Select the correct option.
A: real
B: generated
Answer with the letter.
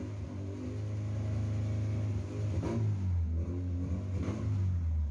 A